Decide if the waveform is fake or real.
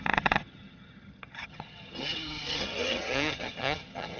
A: fake